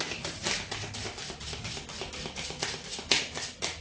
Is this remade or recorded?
recorded